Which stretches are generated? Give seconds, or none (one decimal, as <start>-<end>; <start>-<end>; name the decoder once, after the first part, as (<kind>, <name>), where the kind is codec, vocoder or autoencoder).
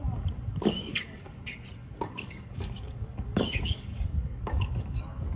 0.5-1.4 (codec, DAC); 1.8-5.0